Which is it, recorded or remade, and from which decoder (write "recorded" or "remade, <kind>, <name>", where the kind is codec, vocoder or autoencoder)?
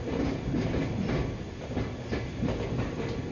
recorded